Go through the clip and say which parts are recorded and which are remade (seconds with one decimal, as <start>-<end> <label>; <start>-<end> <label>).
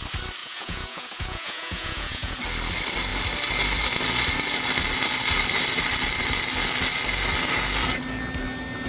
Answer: 0.0-0.4 recorded; 0.4-2.4 remade; 2.4-8.9 recorded